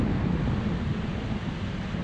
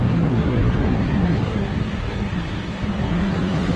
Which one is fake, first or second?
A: second